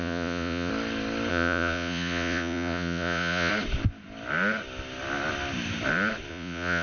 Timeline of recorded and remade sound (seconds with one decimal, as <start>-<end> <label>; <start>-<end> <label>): 0.0-0.7 remade; 0.7-1.3 recorded; 1.3-3.5 remade; 3.5-6.3 recorded; 6.3-6.8 remade